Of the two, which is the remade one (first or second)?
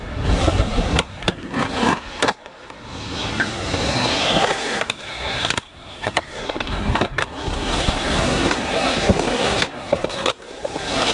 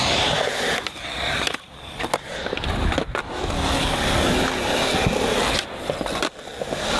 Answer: first